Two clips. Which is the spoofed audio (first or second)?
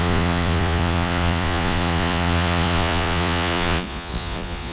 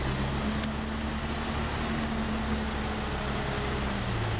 first